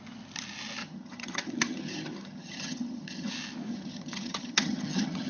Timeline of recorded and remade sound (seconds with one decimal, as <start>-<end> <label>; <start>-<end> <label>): 0.0-0.8 recorded; 0.8-3.3 remade; 3.3-3.7 recorded; 3.7-5.3 remade